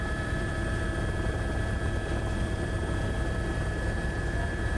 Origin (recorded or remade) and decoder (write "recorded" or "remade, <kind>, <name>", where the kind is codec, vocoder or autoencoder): remade, vocoder, BigVGAN v2